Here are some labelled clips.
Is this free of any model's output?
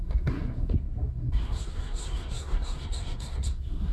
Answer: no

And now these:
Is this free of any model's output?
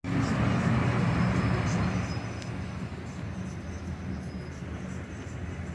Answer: yes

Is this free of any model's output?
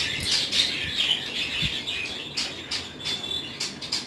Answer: yes